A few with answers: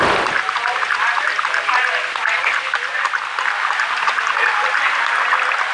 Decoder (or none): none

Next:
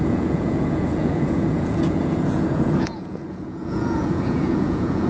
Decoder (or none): vocoder, Vocos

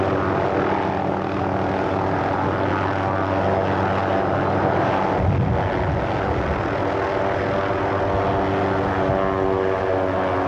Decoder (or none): none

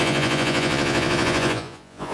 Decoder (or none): vocoder, Vocos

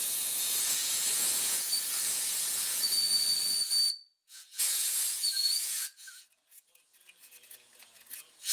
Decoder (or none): vocoder, Vocos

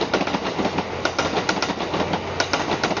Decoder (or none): none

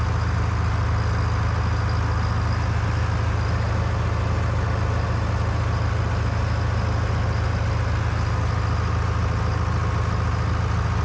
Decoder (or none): none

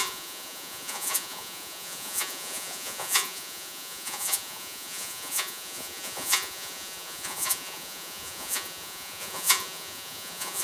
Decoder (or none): vocoder, Vocos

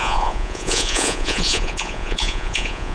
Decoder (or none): vocoder, Vocos